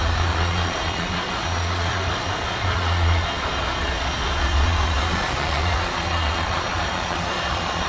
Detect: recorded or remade remade